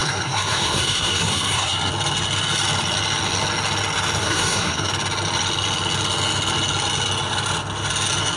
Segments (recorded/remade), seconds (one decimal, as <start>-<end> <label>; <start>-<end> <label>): 0.0-1.9 remade; 1.9-4.2 recorded; 4.2-4.9 remade; 4.9-8.4 recorded